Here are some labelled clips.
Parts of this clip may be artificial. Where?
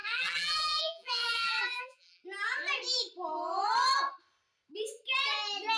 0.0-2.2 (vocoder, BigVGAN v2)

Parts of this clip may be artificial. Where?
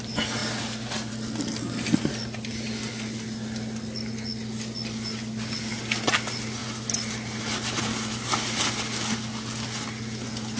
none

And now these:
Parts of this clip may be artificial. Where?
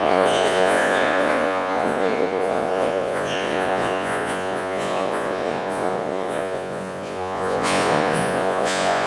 0.0-9.1 (vocoder, Vocos)